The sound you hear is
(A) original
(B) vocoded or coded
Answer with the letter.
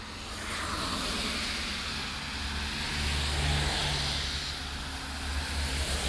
A